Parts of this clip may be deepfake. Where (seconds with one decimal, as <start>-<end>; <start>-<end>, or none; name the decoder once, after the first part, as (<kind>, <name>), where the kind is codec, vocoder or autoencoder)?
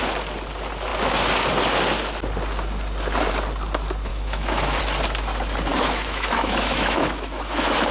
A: 4.1-4.8 (autoencoder, DAC-VAE); 5.7-7.9